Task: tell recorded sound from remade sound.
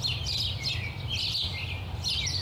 recorded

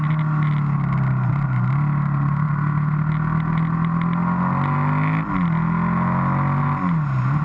recorded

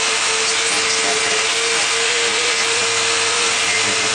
recorded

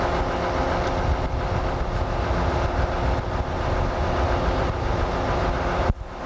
recorded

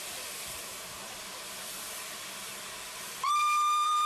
remade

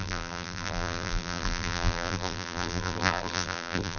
remade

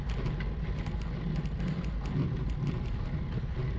recorded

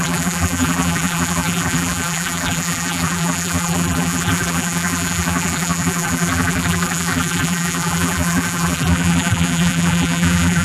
remade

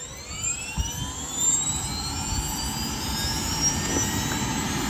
recorded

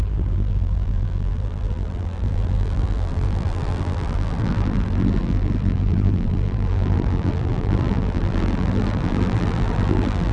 remade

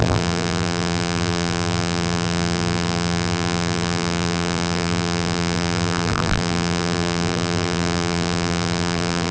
remade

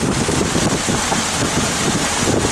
recorded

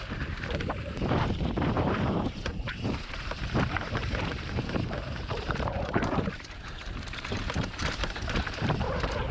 remade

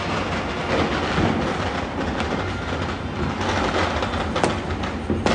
recorded